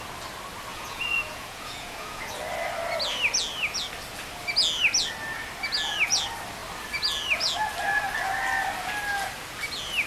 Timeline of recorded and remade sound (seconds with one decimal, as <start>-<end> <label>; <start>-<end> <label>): 0.0-0.7 recorded; 0.7-2.3 remade; 2.3-10.1 recorded